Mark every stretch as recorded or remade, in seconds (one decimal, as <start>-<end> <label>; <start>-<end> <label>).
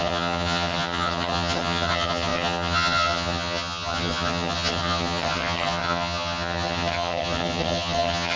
0.0-8.4 remade